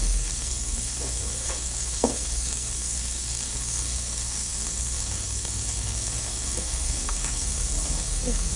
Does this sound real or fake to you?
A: fake